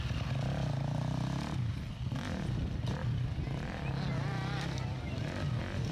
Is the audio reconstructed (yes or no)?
no